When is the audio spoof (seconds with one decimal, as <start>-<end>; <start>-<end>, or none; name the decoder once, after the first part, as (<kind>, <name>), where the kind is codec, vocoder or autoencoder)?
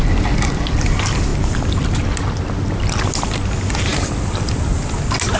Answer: none